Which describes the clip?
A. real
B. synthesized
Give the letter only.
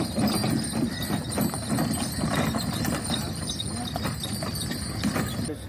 A